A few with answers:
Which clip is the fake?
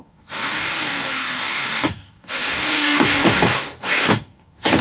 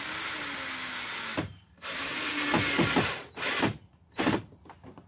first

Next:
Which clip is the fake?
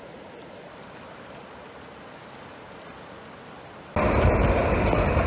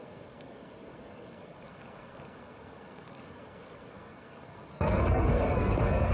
second